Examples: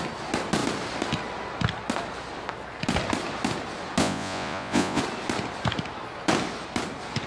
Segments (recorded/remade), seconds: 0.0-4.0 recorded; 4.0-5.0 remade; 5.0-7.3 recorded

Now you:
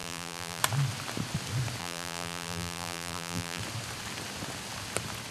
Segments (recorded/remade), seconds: 0.0-0.6 remade; 0.6-1.8 recorded; 1.8-3.6 remade; 3.6-5.3 recorded

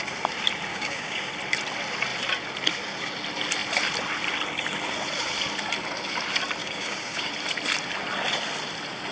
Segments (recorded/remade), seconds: 0.0-0.7 recorded; 0.7-1.3 remade; 1.3-6.6 recorded; 6.6-7.3 remade; 7.3-9.1 recorded

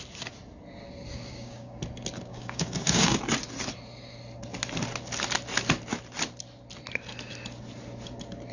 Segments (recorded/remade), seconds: 0.0-1.1 recorded; 1.1-1.8 remade; 1.8-2.3 recorded; 2.3-3.2 remade; 3.2-8.5 recorded

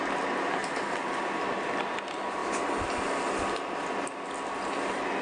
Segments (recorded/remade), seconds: 0.0-5.2 recorded

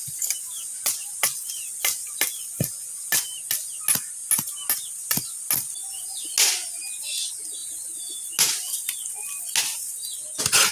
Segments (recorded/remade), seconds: 0.0-10.7 recorded

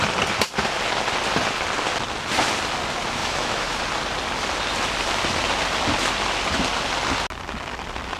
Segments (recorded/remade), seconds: 0.0-3.2 recorded; 3.2-3.8 remade; 3.8-8.2 recorded